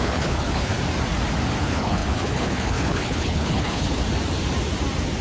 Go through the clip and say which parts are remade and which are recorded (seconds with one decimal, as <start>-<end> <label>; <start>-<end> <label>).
0.0-0.7 remade; 0.7-1.6 recorded; 1.6-4.0 remade; 4.0-5.2 recorded